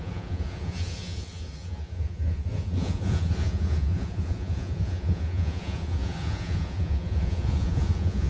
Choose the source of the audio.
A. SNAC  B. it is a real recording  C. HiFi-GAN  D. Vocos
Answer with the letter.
D